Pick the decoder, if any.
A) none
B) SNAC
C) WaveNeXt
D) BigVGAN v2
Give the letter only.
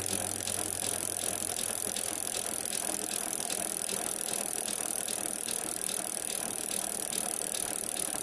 A